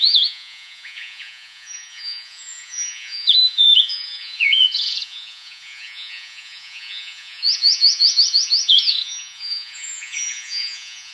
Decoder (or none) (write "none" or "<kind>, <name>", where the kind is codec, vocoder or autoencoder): vocoder, Vocos